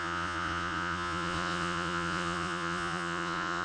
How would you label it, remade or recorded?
remade